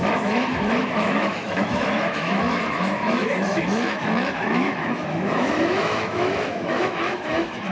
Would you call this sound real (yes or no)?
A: no